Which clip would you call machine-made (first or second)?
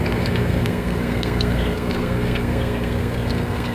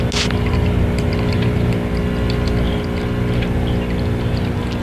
first